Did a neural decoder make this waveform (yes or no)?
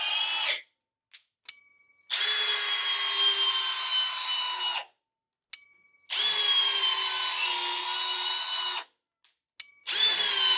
no